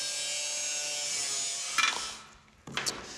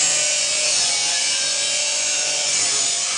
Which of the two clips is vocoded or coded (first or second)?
second